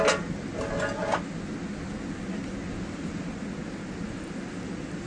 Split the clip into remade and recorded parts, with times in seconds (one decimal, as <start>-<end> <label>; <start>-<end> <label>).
0.0-5.1 recorded